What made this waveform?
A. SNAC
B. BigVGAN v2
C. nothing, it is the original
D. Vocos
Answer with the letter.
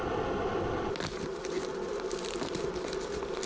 C